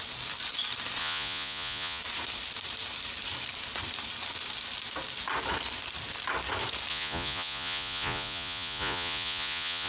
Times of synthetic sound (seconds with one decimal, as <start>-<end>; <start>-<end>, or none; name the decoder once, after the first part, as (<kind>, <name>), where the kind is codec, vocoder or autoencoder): 1.0-2.0 (vocoder, Vocos); 6.9-9.9